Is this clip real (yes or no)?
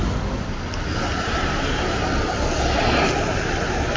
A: yes